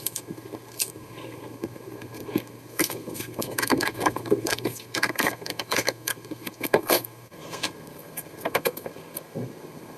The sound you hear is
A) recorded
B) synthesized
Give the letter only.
B